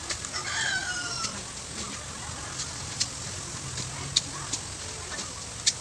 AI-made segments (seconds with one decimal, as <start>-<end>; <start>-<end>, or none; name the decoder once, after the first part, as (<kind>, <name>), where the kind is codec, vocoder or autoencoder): none